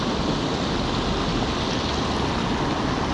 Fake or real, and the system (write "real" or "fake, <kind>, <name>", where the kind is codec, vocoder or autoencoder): real